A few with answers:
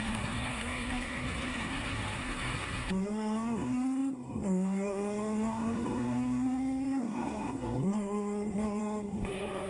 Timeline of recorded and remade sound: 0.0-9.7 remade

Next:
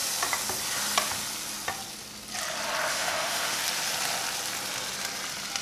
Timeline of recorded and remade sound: 0.0-2.9 recorded; 2.9-3.6 remade; 3.6-5.6 recorded

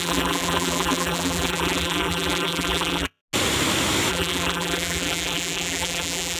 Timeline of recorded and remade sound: 0.0-3.2 remade; 3.2-4.1 recorded; 4.1-6.4 remade

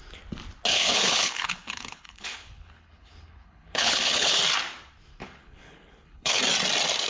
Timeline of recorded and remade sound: 0.0-0.7 recorded; 0.7-4.4 remade; 4.4-5.1 recorded; 5.1-6.4 remade; 6.4-7.1 recorded

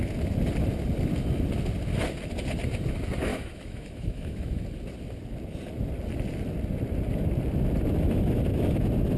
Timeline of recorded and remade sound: 0.0-3.3 recorded; 3.3-4.6 remade; 4.6-9.2 recorded